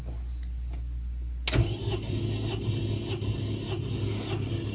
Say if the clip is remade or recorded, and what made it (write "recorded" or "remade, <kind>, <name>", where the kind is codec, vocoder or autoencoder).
recorded